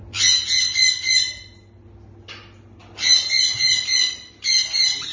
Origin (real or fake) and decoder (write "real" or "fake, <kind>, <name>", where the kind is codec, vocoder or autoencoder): real